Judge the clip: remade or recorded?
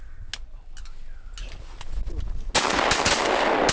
recorded